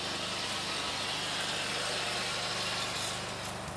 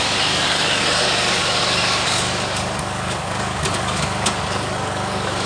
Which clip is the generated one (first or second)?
second